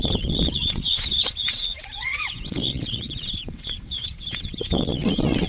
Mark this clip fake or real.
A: fake